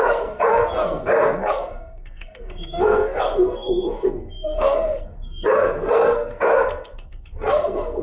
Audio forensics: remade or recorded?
remade